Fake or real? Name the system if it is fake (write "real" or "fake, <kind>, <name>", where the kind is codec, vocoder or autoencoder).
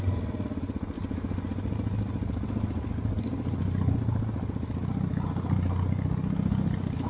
real